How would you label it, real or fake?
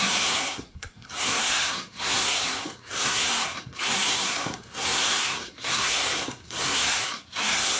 fake